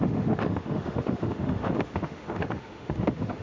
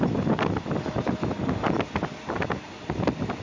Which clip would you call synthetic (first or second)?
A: first